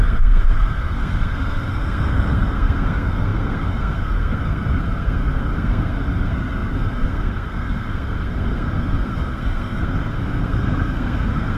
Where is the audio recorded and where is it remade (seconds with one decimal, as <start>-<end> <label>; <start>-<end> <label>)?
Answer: 0.0-11.6 remade